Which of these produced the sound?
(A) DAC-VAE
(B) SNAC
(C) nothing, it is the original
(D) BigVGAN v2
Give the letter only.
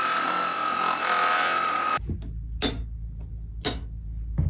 C